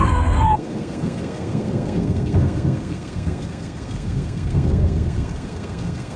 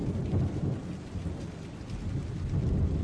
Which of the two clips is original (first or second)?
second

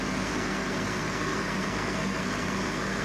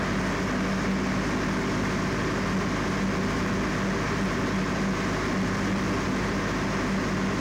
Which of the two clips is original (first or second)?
second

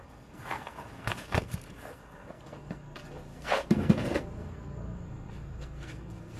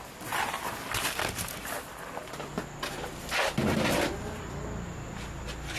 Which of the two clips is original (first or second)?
second